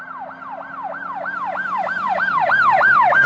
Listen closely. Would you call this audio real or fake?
fake